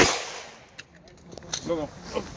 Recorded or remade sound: recorded